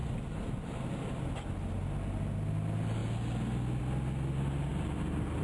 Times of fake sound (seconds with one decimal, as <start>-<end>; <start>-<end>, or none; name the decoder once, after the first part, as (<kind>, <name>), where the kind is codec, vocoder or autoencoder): none